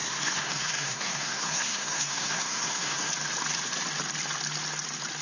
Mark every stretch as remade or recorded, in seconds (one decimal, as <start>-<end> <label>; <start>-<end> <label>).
0.0-3.1 remade; 3.1-5.2 recorded

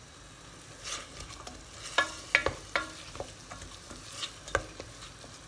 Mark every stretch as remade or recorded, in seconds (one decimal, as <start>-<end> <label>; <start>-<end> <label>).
0.0-5.5 recorded

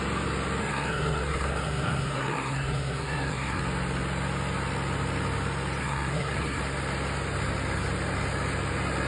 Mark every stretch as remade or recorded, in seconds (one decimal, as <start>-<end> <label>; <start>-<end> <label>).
0.0-0.6 recorded; 0.6-3.6 remade; 3.6-5.8 recorded; 5.8-6.6 remade; 6.6-9.1 recorded

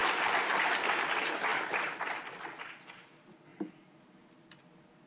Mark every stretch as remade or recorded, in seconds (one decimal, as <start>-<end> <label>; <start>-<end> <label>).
0.0-3.5 recorded; 3.5-4.3 remade; 4.3-5.1 recorded

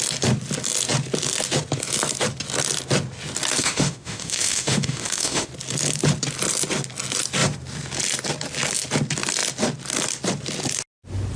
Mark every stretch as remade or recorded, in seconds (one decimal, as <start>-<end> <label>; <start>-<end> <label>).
0.0-3.6 recorded; 3.6-5.5 remade; 5.5-11.4 recorded

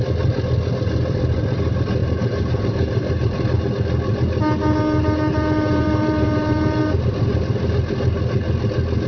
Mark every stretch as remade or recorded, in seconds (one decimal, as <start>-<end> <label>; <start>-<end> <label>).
0.0-2.0 recorded; 2.0-3.6 remade; 3.6-5.3 recorded; 5.3-7.4 remade; 7.4-9.1 recorded